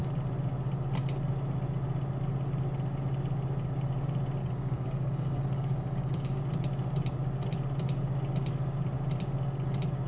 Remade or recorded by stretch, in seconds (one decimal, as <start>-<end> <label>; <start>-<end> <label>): 0.0-4.4 recorded; 4.4-6.4 remade; 6.4-10.1 recorded